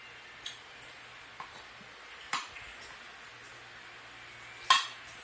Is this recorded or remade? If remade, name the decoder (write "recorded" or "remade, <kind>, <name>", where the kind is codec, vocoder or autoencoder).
recorded